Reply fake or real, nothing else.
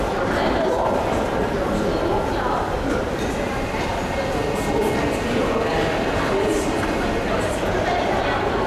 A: fake